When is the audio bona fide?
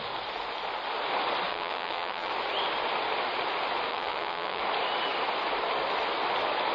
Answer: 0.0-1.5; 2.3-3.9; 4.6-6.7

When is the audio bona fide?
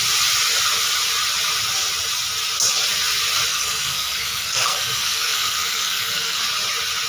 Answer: 0.0-3.5; 6.4-7.1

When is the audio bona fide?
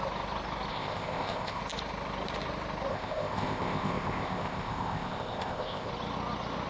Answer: 0.0-0.7; 1.6-2.9; 5.9-6.7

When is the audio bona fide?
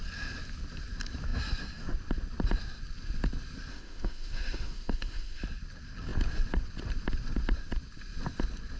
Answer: 0.0-3.7; 5.4-8.8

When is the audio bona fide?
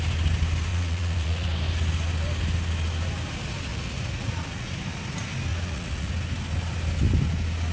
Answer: 0.0-0.7; 1.5-3.7; 4.7-5.5; 6.1-7.7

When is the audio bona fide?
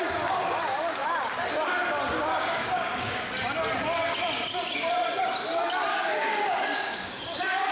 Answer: 0.0-2.3; 3.3-5.9